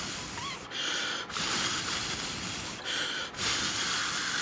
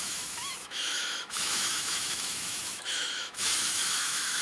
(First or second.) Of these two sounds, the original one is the first